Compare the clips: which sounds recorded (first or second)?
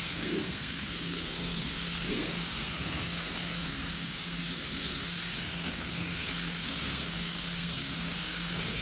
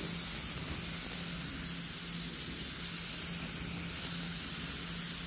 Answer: second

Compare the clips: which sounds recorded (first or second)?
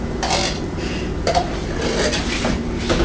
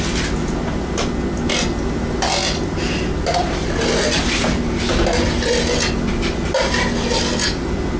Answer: second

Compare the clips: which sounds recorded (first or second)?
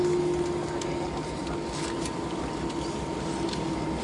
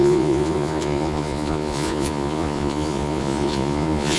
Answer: first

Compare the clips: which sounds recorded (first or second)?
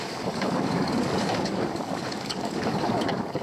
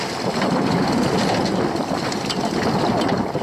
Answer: second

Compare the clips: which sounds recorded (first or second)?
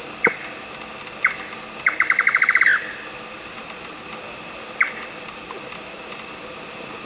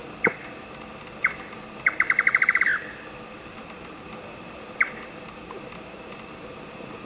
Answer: first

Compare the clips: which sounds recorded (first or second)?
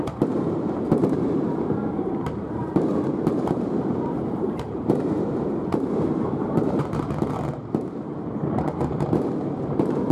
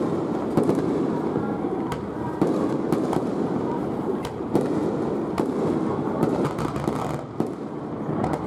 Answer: second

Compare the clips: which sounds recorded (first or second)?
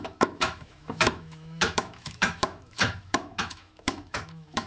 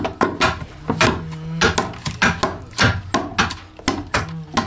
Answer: second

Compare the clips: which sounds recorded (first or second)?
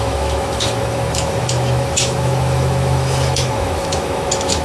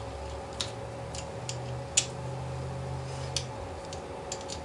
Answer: second